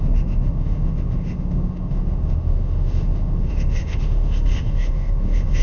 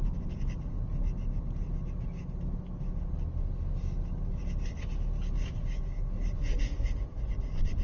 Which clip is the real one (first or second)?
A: second